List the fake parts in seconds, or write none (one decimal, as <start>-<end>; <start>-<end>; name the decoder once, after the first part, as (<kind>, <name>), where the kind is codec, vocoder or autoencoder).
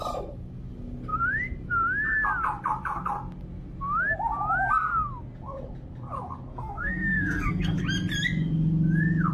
6.5-7.8 (codec, SNAC)